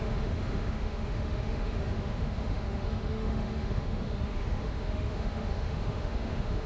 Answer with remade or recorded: remade